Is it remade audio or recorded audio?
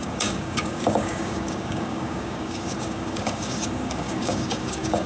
remade